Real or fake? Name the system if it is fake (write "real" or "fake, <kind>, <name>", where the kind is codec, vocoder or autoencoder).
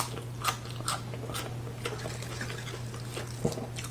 real